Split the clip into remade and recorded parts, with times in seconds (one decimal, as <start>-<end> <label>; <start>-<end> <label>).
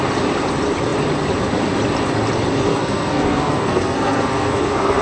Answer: 0.0-2.7 recorded; 2.7-5.0 remade